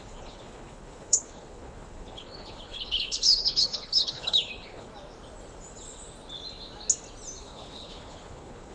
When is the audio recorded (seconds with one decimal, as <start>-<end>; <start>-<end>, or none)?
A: 4.9-7.4